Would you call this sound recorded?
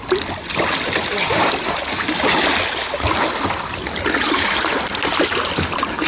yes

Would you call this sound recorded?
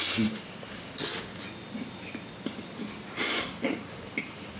yes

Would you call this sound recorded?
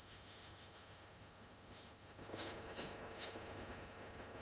no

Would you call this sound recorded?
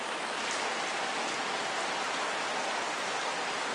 yes